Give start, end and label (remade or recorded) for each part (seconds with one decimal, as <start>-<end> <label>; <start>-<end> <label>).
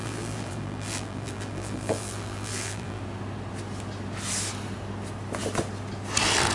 0.0-3.0 remade; 3.0-6.5 recorded